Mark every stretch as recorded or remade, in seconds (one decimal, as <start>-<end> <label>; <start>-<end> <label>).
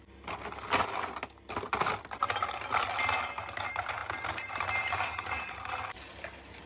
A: 0.0-6.7 recorded